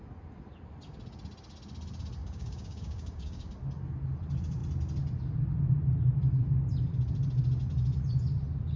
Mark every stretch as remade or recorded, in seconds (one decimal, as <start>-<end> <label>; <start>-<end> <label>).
0.0-2.2 recorded; 2.2-3.5 remade; 3.5-8.8 recorded